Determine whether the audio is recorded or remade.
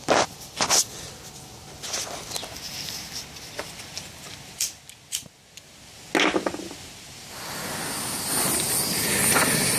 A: recorded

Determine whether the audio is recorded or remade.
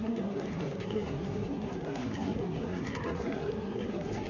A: remade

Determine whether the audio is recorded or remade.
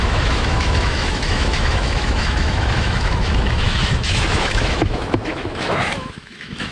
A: remade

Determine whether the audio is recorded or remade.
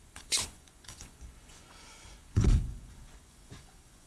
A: remade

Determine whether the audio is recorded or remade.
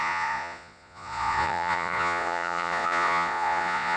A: remade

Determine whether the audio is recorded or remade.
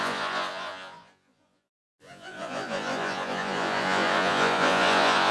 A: remade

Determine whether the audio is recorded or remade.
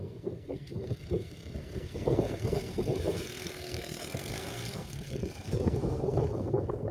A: remade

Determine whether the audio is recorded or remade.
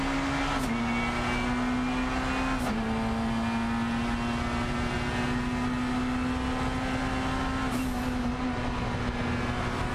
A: recorded